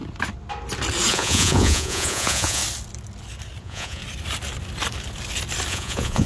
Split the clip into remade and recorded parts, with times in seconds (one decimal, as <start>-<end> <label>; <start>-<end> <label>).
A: 0.0-1.1 recorded; 1.1-2.6 remade; 2.6-3.6 recorded; 3.6-4.0 remade; 4.0-5.7 recorded; 5.7-6.3 remade